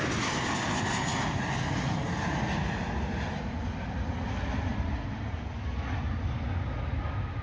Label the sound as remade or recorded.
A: recorded